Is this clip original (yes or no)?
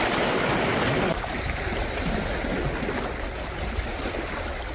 yes